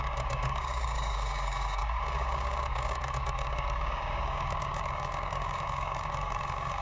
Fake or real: fake